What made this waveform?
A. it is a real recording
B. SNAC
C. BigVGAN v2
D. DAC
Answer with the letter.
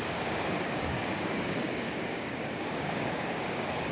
D